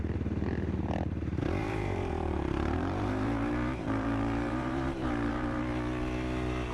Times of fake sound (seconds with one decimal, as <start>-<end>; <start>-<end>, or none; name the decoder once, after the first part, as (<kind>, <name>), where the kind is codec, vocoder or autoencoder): 1.6-5.6 (vocoder, BigVGAN v2)